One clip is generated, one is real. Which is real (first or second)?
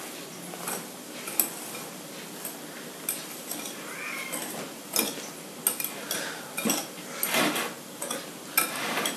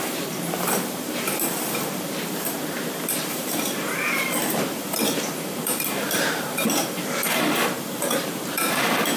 first